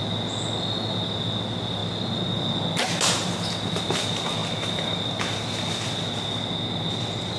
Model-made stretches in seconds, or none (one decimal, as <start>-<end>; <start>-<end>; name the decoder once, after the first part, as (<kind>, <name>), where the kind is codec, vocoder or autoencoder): none

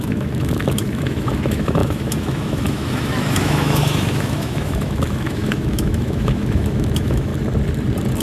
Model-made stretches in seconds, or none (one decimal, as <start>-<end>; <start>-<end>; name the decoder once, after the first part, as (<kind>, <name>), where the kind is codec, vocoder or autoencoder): 0.0-7.3 (autoencoder, DAC-VAE)

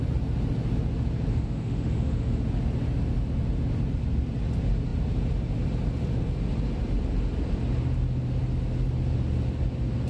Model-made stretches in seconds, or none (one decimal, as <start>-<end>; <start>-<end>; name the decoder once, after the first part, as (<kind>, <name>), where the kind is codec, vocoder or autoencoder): 1.3-2.4 (autoencoder, DAC-VAE)

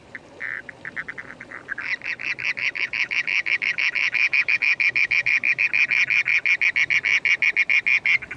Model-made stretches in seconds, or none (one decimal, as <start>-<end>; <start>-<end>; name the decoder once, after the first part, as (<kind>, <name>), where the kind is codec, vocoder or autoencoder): 2.6-5.6 (autoencoder, DAC-VAE)

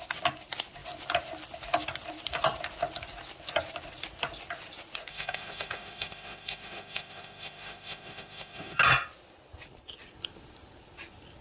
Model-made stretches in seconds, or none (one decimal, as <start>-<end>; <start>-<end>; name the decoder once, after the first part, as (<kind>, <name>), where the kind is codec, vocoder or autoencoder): 5.1-8.8 (autoencoder, DAC-VAE)

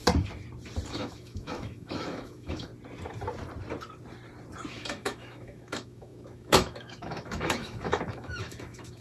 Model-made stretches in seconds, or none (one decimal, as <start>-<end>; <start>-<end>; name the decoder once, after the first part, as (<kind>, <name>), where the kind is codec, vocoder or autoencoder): 0.9-2.7 (autoencoder, DAC-VAE); 4.7-9.0

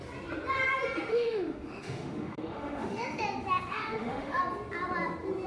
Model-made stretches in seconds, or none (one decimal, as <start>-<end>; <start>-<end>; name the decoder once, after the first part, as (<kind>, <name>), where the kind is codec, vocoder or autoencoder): 1.1-3.2 (autoencoder, DAC-VAE); 3.7-4.4

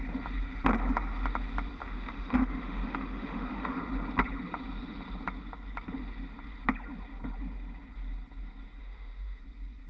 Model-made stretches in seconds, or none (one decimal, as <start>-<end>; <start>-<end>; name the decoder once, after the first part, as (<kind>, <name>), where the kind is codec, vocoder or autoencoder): 1.8-3.8 (autoencoder, DAC-VAE); 8.8-9.4